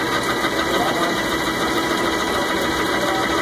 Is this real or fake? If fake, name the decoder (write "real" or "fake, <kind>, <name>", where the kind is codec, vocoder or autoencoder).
real